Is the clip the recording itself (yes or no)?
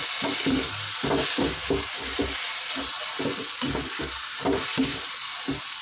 yes